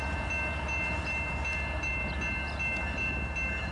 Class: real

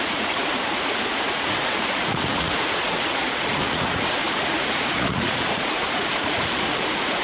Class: fake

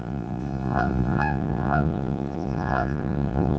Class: fake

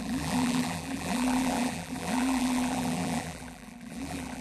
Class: fake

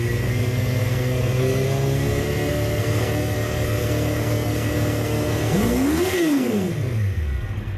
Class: fake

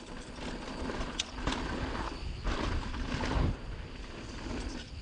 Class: real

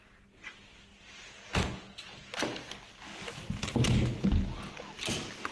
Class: real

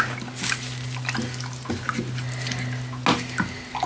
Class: real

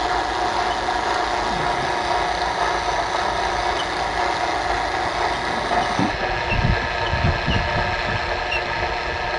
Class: real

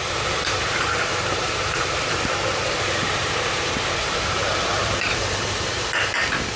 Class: fake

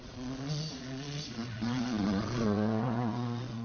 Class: fake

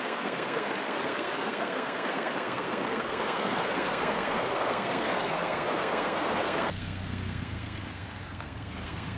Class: fake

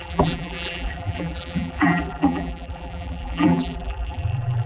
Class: fake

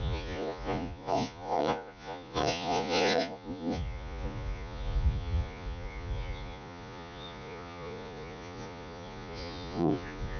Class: fake